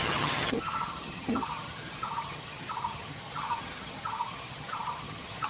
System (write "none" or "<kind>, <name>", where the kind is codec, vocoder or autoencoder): vocoder, HiFi-GAN